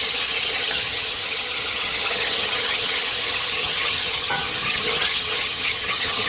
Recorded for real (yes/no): no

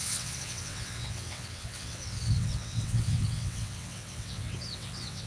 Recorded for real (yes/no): no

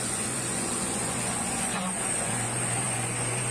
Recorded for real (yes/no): no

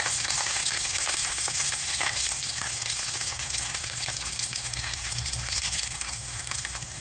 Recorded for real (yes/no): no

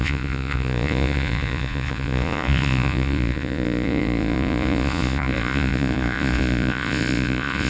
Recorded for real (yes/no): no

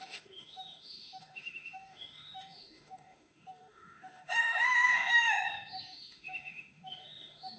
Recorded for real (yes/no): no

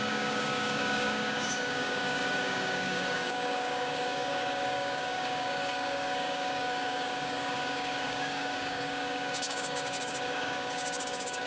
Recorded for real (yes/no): no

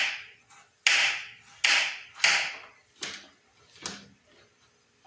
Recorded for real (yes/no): yes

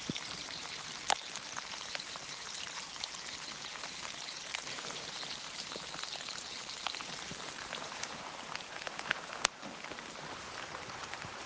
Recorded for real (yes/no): no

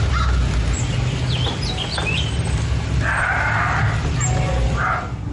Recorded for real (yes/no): yes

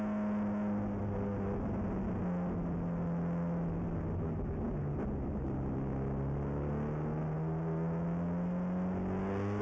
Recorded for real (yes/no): yes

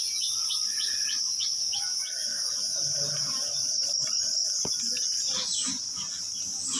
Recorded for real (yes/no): yes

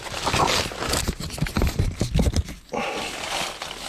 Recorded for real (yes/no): yes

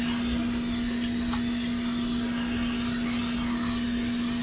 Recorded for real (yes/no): yes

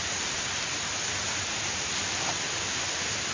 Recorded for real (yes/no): yes